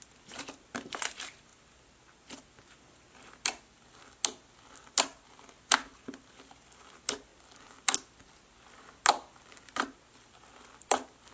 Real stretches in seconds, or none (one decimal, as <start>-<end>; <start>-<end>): 0.0-11.3